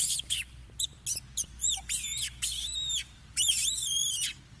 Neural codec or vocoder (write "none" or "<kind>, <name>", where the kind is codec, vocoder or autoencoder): vocoder, BigVGAN v2